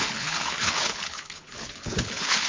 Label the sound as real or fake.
fake